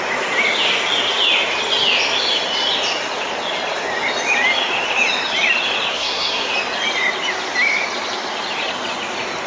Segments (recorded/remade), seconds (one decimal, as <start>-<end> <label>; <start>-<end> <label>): 0.0-5.9 recorded; 5.9-6.5 remade; 6.5-9.5 recorded